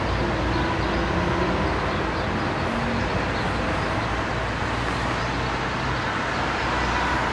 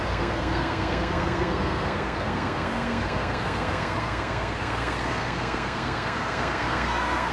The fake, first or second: second